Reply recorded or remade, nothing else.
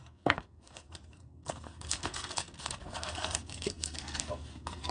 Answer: remade